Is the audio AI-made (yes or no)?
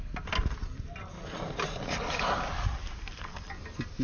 no